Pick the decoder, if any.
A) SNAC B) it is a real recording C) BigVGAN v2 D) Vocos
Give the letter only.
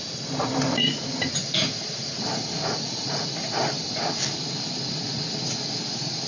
B